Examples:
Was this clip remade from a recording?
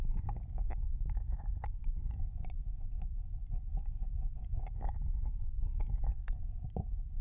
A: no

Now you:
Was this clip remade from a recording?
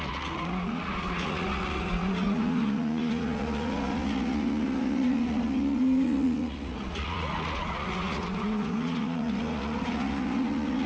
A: yes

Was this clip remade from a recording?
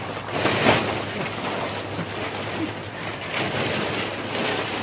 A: no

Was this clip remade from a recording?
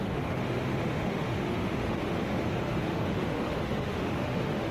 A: yes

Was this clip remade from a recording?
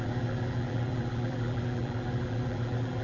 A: yes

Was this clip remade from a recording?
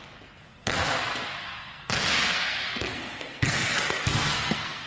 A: yes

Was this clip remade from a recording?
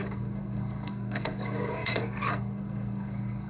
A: yes